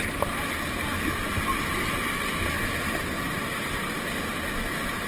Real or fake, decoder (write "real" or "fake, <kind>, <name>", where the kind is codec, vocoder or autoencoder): real